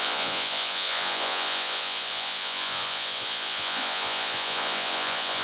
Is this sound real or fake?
fake